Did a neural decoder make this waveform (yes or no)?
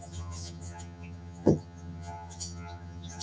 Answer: yes